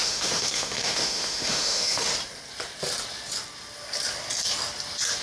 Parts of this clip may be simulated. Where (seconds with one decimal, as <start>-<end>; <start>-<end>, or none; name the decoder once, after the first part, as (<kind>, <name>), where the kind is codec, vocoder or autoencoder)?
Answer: 0.0-2.1 (autoencoder, DAC-VAE)